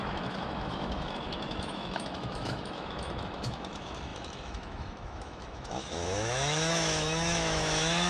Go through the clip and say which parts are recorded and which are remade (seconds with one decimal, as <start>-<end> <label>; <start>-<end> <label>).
0.0-8.1 remade